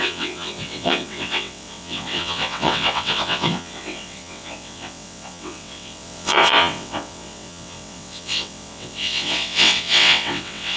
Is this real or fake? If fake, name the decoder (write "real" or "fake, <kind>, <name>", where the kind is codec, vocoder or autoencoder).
fake, vocoder, WaveNeXt